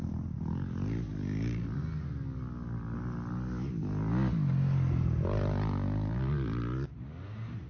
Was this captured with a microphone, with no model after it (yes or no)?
yes